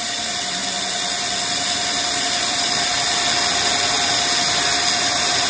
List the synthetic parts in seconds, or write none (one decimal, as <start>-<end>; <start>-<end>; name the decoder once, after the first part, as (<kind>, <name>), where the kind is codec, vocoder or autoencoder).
0.0-0.6 (vocoder, BigVGAN v2); 2.4-2.9